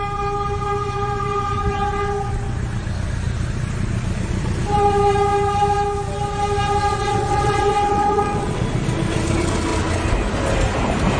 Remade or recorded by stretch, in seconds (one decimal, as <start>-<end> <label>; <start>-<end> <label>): 0.0-6.9 recorded; 6.9-8.6 remade; 8.6-11.2 recorded